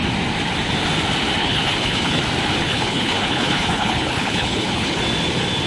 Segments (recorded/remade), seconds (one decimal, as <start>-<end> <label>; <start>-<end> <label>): 0.0-1.4 recorded; 1.4-2.2 remade; 2.2-2.6 recorded; 2.6-5.0 remade; 5.0-5.7 recorded